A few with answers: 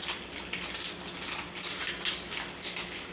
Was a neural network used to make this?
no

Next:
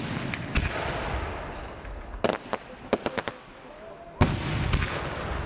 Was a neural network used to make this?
no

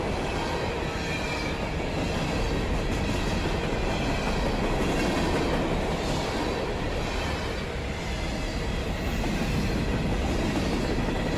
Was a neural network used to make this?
no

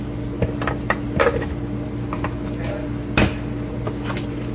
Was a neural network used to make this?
no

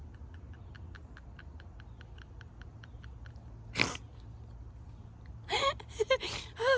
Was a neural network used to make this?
no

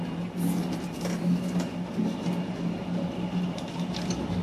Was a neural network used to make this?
no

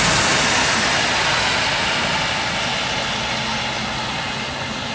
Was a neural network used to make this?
no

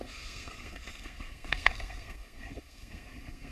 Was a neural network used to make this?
yes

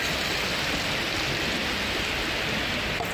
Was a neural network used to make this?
no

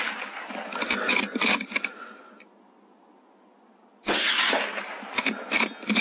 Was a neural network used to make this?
no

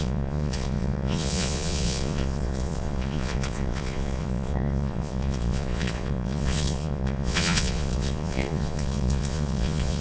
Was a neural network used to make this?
yes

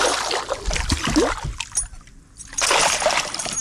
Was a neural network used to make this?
no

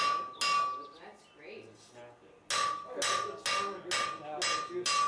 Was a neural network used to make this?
no